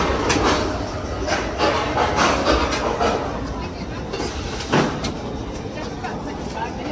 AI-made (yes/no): no